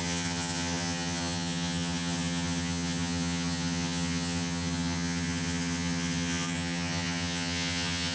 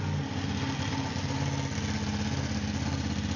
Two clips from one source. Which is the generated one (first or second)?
first